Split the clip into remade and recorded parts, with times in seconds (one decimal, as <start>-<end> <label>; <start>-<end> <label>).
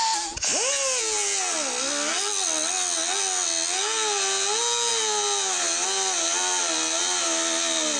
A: 0.0-8.0 recorded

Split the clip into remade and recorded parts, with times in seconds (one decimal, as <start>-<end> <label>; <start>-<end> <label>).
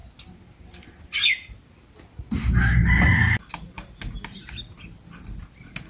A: 0.0-5.9 recorded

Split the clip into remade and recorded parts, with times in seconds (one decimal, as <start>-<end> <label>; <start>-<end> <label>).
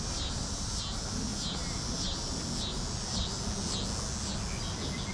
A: 0.0-5.1 recorded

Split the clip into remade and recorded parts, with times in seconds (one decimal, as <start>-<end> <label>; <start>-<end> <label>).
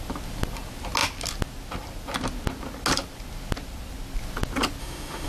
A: 0.0-4.8 recorded; 4.8-5.3 remade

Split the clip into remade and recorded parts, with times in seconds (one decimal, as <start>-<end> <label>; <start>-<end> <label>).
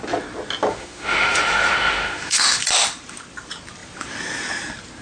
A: 0.0-0.7 recorded; 0.7-2.6 remade; 2.6-5.0 recorded